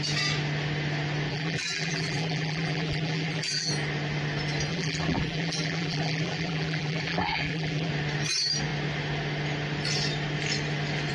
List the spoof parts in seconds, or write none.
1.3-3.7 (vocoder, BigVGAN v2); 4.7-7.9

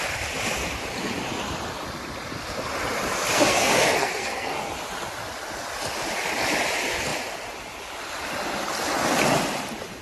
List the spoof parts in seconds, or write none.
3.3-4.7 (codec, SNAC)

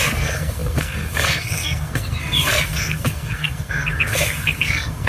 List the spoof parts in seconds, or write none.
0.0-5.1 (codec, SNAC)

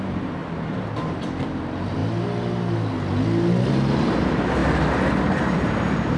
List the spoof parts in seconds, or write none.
0.0-0.4 (vocoder, BigVGAN v2); 1.0-2.0; 3.7-4.6; 5.3-6.2

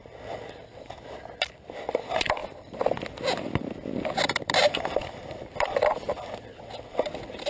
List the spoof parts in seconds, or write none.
2.4-6.5 (vocoder, BigVGAN v2)